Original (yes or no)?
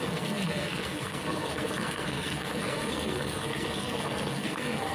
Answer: no